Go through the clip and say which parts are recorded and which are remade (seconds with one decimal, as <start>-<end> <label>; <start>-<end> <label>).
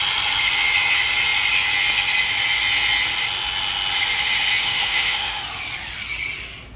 0.0-4.6 recorded; 4.6-5.4 remade; 5.4-6.8 recorded